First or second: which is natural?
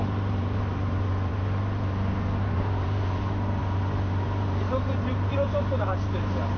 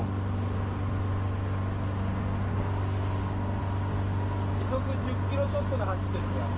second